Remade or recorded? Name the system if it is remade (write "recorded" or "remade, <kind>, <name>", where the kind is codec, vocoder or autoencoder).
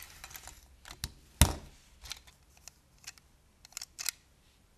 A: recorded